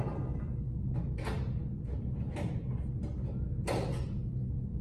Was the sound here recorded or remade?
recorded